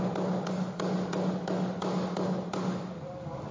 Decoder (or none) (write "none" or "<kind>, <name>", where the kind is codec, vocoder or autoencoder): none